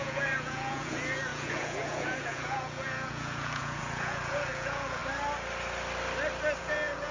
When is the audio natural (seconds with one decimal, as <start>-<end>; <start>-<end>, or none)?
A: 5.0-6.6